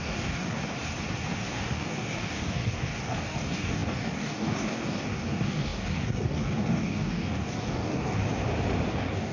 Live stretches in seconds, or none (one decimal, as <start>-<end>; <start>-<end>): 0.6-1.5; 8.2-8.9